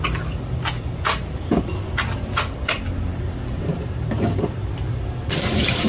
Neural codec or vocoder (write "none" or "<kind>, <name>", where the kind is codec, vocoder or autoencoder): none